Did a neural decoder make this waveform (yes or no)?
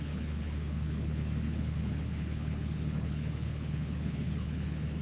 yes